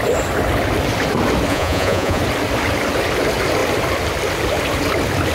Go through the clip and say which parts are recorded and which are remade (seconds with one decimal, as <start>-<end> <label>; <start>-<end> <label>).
0.0-1.5 recorded; 1.5-2.2 remade; 2.2-5.3 recorded